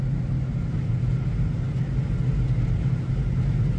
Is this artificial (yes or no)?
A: no